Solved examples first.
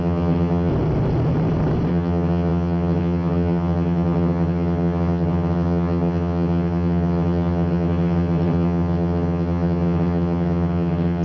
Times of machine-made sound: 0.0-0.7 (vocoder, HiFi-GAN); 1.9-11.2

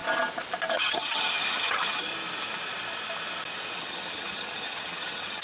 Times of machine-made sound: 0.7-2.1 (vocoder, HiFi-GAN); 3.8-5.4

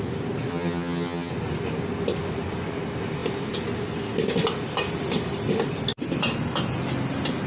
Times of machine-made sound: 0.5-1.3 (vocoder, HiFi-GAN)

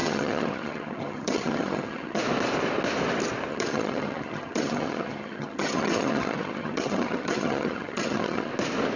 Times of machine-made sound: 0.0-2.2 (vocoder, HiFi-GAN); 3.5-8.5

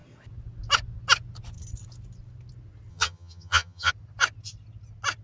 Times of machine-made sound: 2.9-3.9 (vocoder, HiFi-GAN)

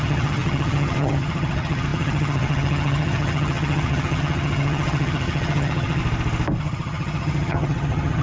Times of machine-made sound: 0.0-6.0 (vocoder, HiFi-GAN); 6.6-8.2